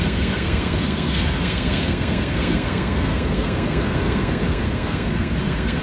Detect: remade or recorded remade